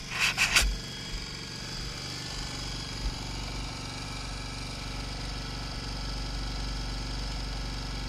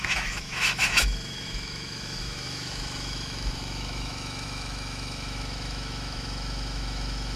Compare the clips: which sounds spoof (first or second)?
second